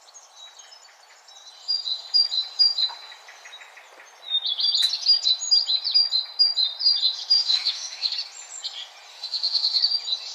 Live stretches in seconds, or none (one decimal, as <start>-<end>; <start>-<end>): 0.0-7.4; 8.1-9.1; 9.8-10.3